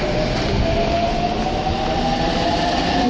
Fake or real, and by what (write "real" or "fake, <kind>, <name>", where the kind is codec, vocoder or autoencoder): real